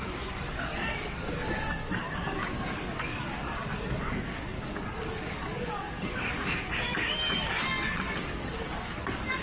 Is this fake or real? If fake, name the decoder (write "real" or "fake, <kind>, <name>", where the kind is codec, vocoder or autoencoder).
fake, codec, DAC